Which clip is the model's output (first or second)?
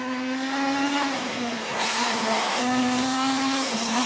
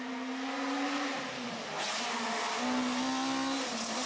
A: first